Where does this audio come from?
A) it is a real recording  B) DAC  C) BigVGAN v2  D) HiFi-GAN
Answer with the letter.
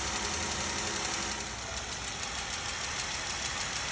A